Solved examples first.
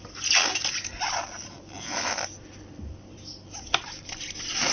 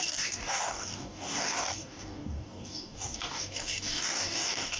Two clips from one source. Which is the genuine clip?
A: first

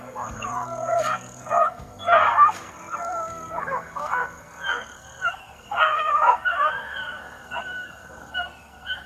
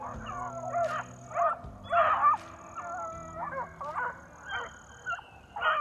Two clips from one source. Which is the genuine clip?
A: second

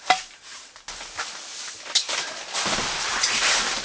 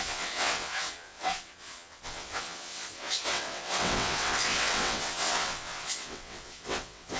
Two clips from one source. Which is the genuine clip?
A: first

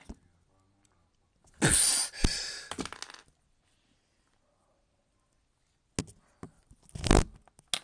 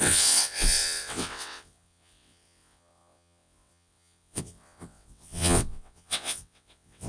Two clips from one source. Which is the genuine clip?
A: first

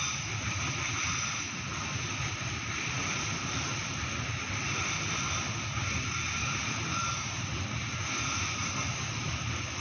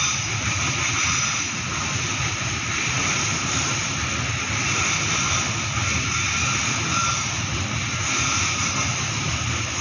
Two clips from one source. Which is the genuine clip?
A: second